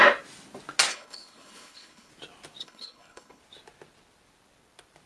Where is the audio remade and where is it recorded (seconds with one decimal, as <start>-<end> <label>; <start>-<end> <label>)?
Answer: 0.0-0.9 recorded; 0.9-2.1 remade; 2.1-2.6 recorded; 2.6-3.4 remade; 3.4-5.1 recorded